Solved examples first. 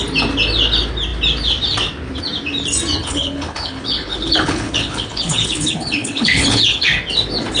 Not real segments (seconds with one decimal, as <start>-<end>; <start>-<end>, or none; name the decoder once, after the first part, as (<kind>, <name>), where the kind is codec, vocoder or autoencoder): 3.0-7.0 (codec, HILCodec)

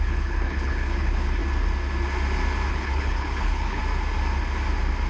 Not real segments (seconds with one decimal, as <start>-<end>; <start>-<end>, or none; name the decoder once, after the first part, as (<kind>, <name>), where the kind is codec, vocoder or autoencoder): 0.0-1.4 (codec, HILCodec); 2.7-3.8

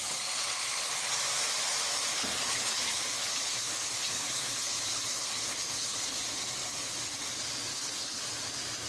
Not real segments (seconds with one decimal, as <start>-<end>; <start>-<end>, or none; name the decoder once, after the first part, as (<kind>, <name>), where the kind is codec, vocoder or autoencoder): 2.1-6.2 (codec, HILCodec); 7.7-8.2